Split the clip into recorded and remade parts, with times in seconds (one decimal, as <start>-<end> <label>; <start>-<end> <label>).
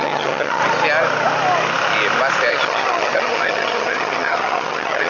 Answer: 0.0-0.6 remade; 0.6-2.5 recorded; 2.5-5.1 remade